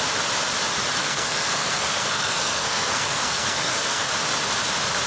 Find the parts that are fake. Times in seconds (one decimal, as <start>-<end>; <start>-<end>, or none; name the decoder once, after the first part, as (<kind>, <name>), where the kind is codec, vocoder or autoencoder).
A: 1.0-4.1 (codec, SNAC)